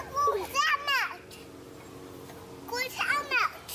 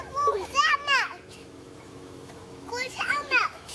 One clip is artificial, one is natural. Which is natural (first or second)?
first